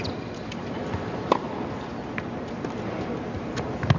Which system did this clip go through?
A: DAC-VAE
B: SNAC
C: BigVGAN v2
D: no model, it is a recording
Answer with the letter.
D